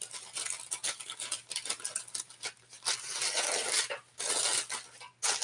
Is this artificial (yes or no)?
no